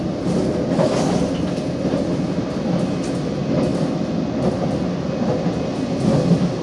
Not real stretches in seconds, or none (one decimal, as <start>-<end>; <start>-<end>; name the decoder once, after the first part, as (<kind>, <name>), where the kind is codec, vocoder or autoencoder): none